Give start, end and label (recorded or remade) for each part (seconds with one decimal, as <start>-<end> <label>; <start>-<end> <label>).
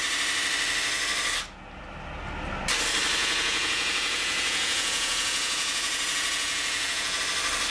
0.0-3.2 recorded; 3.2-7.2 remade; 7.2-7.7 recorded